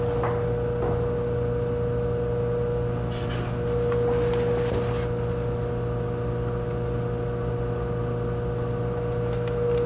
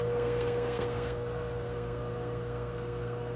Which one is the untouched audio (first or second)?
first